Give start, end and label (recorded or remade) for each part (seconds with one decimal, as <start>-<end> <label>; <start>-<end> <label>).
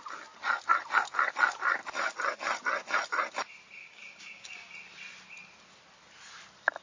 0.0-3.8 recorded; 3.8-4.7 remade; 4.7-6.8 recorded